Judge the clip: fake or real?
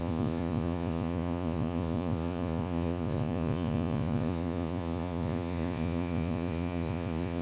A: fake